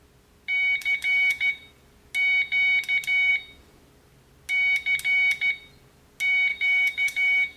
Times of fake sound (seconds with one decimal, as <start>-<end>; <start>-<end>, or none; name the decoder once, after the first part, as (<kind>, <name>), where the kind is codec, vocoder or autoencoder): 0.8-1.6 (autoencoder, DAC-VAE); 6.5-7.6